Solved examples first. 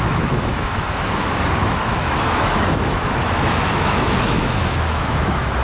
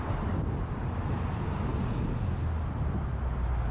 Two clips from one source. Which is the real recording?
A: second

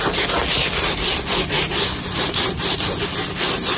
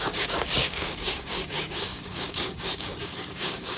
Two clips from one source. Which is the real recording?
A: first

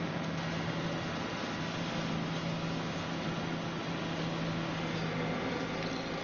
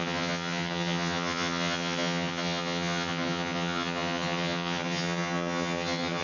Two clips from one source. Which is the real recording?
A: first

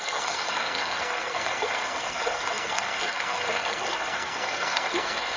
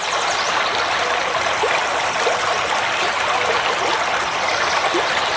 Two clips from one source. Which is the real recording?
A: second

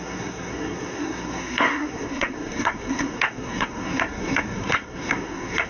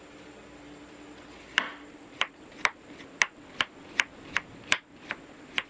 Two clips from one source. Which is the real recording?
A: second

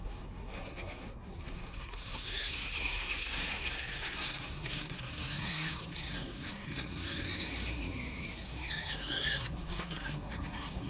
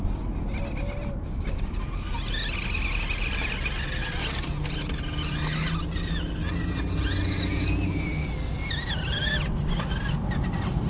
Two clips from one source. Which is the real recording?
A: second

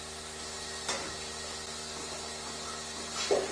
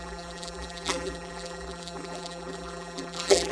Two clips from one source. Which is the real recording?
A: first